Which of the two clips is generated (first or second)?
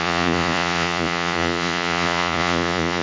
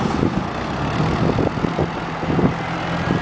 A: first